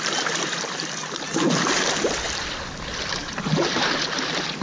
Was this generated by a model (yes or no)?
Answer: no